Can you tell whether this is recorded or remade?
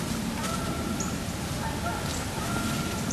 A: recorded